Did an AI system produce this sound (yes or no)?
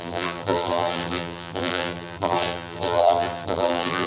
yes